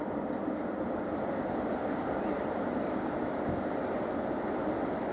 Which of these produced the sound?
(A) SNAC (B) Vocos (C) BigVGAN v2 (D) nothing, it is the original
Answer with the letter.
C